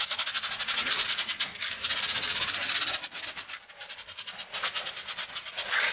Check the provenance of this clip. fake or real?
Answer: real